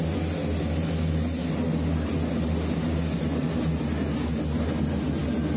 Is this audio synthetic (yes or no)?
no